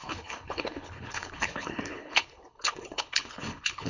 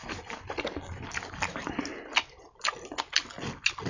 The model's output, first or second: first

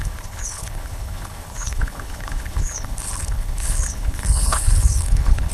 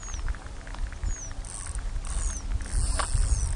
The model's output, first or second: first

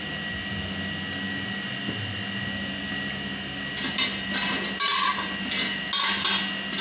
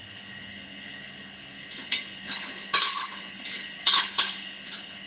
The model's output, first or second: second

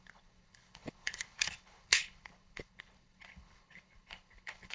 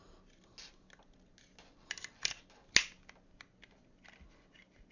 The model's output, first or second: first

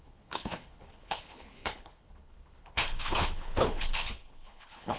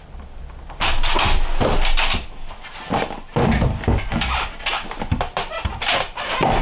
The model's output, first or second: first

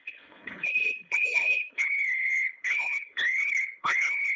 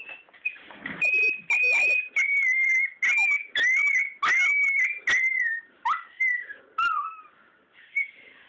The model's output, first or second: first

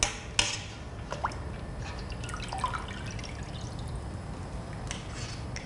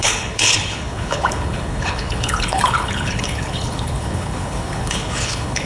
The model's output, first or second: second